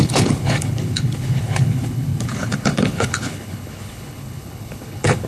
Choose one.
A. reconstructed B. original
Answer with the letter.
A